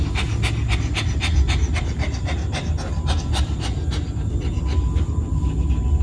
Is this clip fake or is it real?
real